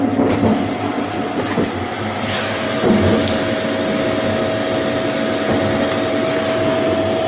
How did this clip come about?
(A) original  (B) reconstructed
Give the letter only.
A